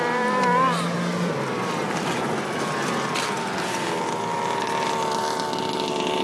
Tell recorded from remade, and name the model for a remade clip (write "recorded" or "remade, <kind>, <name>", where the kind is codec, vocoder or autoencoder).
recorded